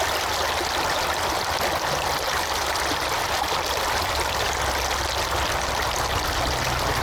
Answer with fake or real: real